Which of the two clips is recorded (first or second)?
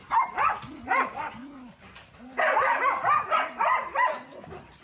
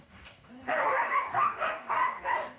first